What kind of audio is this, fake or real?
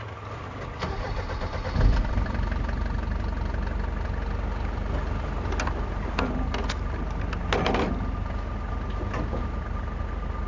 real